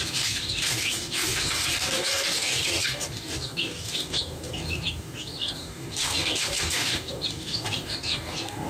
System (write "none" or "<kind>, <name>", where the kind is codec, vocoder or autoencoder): codec, DAC